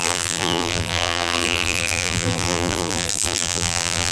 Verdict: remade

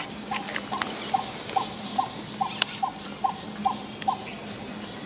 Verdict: recorded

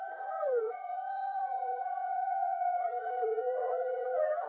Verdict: remade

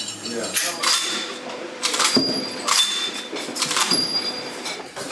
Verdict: remade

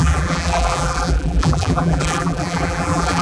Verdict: remade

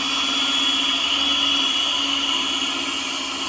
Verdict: recorded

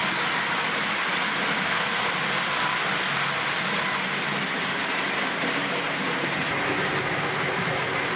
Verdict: recorded